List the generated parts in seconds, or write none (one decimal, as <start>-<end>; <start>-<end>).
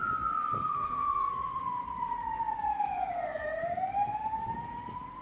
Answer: 0.6-1.6